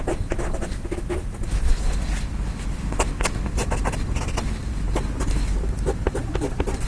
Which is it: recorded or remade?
recorded